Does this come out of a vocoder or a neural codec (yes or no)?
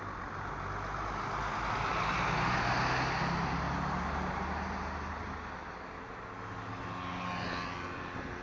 no